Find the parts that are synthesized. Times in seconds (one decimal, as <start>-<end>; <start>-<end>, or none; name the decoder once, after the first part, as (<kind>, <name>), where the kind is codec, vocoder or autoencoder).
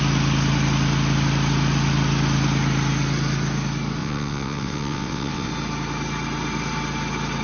4.0-5.5 (vocoder, WaveNeXt)